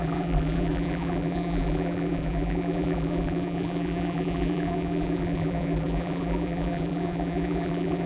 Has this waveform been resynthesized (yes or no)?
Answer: yes